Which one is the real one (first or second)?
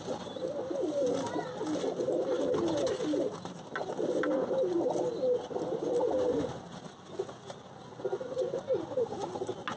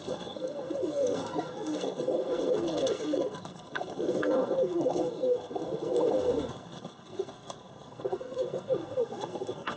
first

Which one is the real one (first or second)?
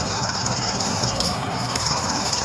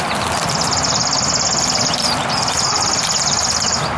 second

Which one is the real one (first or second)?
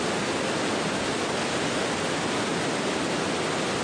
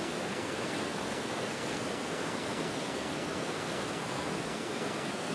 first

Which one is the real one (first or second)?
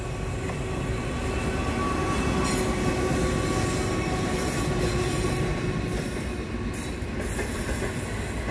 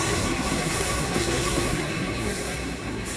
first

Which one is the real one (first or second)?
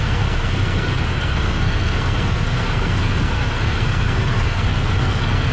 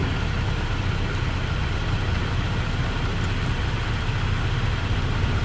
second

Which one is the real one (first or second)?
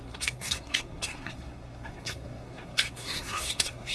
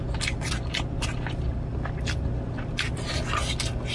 second